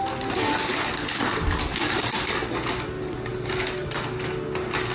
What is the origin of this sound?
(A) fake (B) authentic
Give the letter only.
B